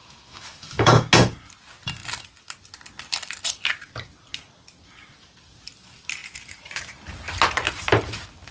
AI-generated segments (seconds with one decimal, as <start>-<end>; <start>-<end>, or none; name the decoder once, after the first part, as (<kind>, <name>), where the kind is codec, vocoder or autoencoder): 0.0-1.1 (autoencoder, DAC-VAE)